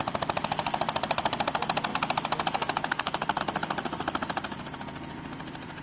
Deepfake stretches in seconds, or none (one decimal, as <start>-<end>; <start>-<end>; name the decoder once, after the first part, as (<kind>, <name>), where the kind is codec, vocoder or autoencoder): none